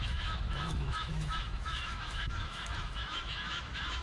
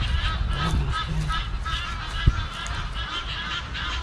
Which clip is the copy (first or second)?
first